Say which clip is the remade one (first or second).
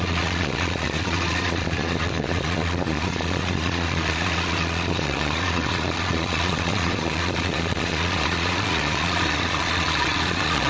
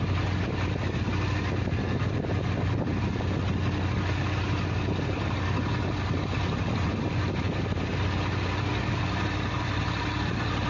first